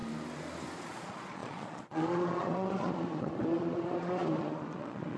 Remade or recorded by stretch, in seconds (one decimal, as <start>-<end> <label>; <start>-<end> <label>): 0.0-0.8 recorded; 0.8-5.2 remade